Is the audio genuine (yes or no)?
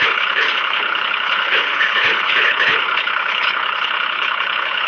no